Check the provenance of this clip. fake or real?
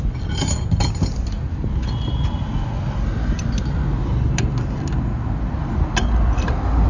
real